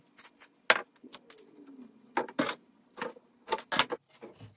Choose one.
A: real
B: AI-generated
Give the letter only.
A